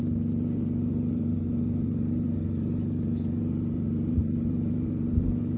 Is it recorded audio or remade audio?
remade